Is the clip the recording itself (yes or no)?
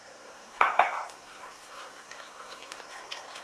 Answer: no